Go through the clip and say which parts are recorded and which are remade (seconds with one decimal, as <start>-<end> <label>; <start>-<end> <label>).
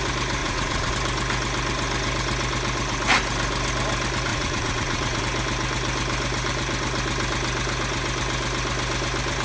0.0-0.4 recorded; 0.4-0.9 remade; 0.9-4.3 recorded; 4.3-5.2 remade; 5.2-9.4 recorded